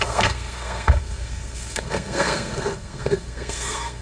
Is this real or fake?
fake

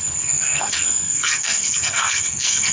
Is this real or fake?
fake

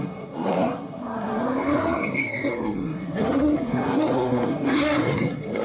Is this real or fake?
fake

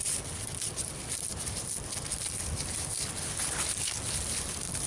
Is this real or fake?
real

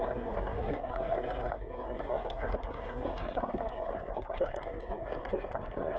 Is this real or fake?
fake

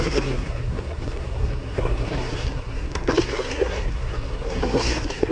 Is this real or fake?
fake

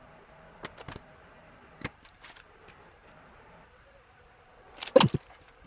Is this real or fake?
real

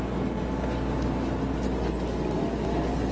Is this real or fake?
real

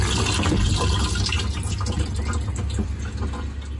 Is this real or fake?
real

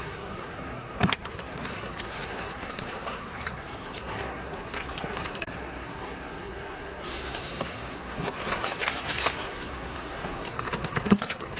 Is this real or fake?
fake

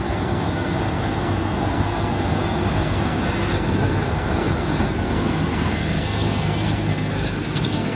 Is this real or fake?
fake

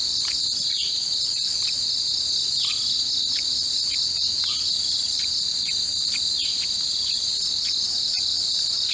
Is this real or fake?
real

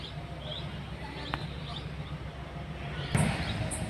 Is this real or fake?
real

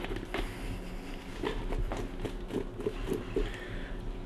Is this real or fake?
real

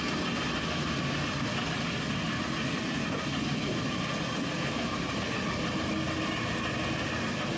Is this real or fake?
real